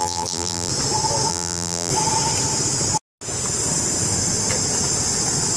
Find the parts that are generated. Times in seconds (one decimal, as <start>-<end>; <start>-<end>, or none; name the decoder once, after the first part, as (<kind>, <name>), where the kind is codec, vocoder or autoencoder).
0.0-0.7 (vocoder, BigVGAN v2); 1.3-1.9